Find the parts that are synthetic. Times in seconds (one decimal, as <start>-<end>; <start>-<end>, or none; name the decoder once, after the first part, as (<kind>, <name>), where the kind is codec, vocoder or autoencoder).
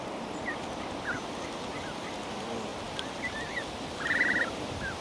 none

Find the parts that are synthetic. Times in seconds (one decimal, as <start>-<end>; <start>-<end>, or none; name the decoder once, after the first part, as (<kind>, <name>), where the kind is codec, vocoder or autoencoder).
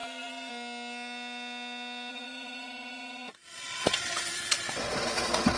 0.0-0.5 (vocoder, Vocos); 2.1-5.6